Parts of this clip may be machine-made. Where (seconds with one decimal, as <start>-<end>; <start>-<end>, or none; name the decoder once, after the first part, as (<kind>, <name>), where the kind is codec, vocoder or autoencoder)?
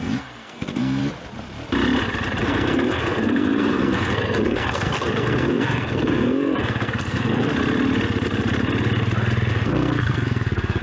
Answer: 0.0-1.0 (codec, SNAC); 2.4-7.5; 9.5-10.8